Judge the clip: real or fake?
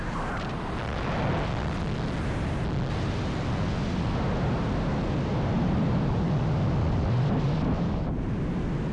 real